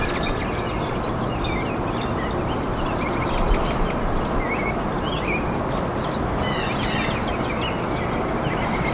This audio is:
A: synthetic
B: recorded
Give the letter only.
B